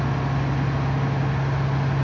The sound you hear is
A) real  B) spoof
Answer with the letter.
A